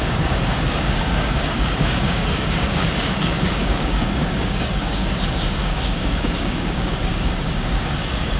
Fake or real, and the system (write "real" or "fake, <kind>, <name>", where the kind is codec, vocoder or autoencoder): fake, codec, DAC